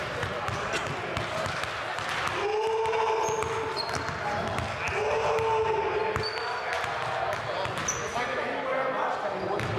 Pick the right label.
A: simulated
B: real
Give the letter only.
B